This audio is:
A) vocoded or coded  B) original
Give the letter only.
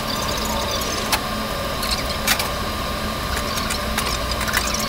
B